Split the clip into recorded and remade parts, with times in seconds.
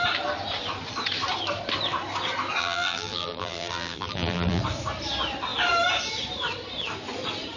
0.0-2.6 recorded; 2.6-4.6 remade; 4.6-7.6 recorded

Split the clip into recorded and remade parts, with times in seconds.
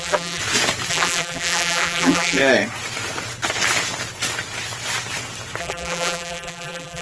0.0-0.4 remade; 0.4-0.9 recorded; 0.9-2.4 remade; 2.4-5.6 recorded; 5.6-7.0 remade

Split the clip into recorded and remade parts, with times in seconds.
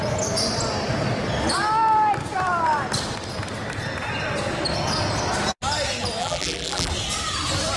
0.0-6.2 recorded; 6.2-6.9 remade; 6.9-7.8 recorded